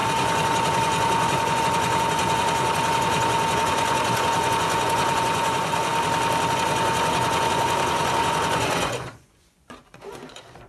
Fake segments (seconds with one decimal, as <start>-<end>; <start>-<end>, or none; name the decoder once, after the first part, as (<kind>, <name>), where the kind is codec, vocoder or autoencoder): 0.0-5.9 (vocoder, Vocos); 6.5-10.7